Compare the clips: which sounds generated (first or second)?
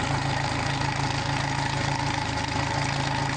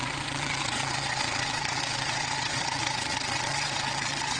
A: second